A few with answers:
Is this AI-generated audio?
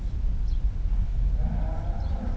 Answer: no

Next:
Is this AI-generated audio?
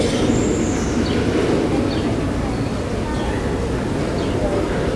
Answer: no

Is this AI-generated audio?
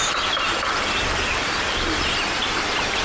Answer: no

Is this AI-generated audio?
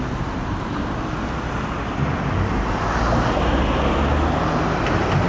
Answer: no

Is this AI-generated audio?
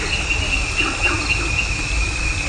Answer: no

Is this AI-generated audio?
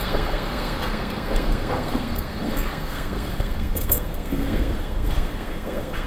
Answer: yes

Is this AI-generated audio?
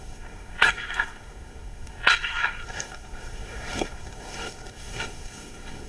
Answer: yes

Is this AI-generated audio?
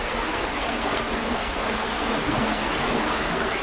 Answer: yes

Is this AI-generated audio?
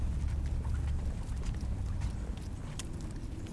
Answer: no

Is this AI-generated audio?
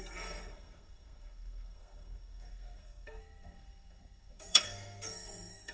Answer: yes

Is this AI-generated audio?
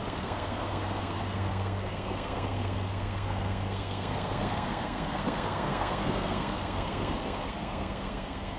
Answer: yes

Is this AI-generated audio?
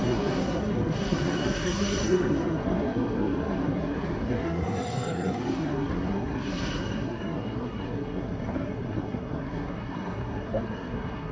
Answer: yes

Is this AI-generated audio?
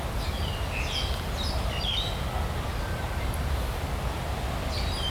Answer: no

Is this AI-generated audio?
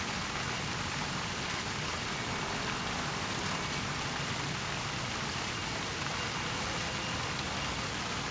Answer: no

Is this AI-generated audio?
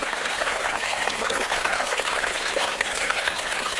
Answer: yes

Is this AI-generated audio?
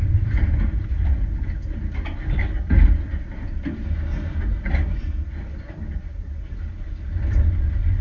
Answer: no